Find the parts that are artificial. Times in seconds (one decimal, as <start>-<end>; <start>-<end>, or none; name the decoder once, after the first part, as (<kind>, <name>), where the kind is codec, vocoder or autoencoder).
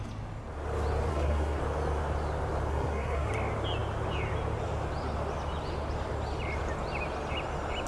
1.1-1.6 (codec, SNAC); 2.7-3.3